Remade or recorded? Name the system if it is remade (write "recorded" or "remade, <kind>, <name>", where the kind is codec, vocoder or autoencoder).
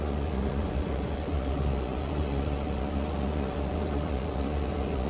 remade, vocoder, Vocos